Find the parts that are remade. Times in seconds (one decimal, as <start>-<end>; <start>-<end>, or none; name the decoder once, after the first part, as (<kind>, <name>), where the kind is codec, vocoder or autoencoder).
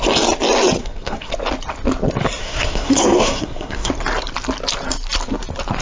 0.8-1.3 (codec, SNAC); 2.4-3.9